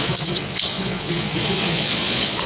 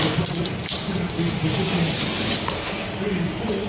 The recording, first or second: second